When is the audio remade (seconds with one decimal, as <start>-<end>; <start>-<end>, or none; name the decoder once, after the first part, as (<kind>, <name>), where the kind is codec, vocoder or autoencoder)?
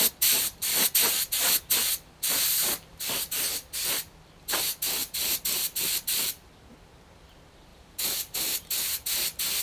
0.6-3.4 (vocoder, BigVGAN v2); 5.0-6.5; 7.7-9.6